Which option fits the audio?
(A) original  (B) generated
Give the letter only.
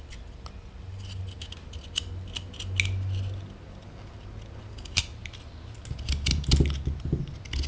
A